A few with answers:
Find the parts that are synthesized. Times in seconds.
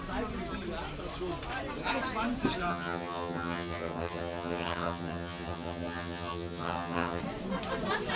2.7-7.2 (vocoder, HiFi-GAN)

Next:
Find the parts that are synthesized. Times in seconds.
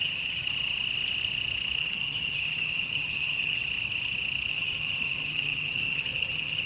0.0-0.4 (vocoder, HiFi-GAN); 1.8-3.6; 4.5-6.7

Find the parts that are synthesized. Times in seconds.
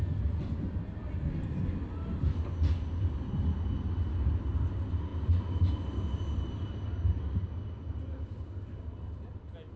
none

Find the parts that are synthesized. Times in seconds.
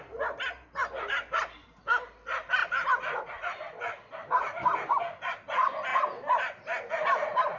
none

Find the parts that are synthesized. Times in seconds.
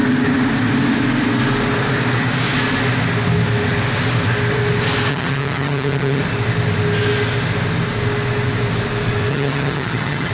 5.1-6.2 (vocoder, HiFi-GAN); 9.3-10.3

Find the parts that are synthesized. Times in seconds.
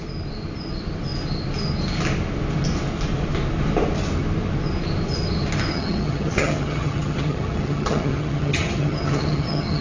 5.7-9.8 (vocoder, HiFi-GAN)